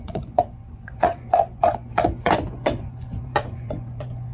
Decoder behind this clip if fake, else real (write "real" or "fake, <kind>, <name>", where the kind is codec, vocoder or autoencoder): fake, vocoder, Vocos